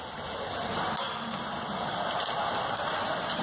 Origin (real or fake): real